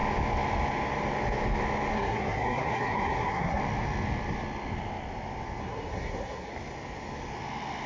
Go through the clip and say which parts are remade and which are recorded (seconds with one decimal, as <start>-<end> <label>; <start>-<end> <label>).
0.0-1.9 recorded; 1.9-3.6 remade; 3.6-5.6 recorded; 5.6-6.5 remade; 6.5-7.9 recorded